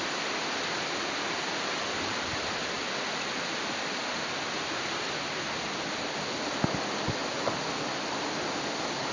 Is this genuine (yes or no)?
yes